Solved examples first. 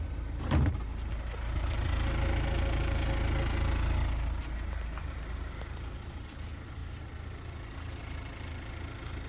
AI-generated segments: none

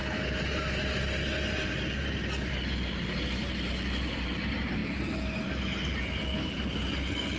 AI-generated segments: none

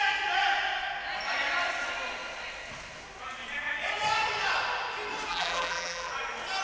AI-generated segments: 5.3-6.1